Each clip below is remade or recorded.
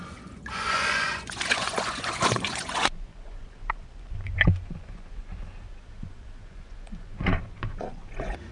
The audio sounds remade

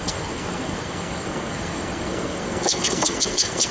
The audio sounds remade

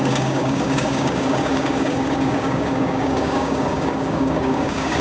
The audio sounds remade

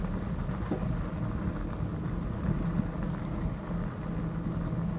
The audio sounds recorded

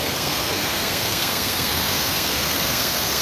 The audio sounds remade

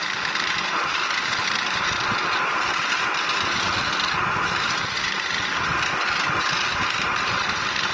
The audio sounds recorded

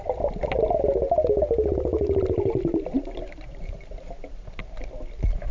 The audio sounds recorded